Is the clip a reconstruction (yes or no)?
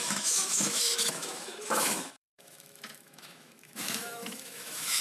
yes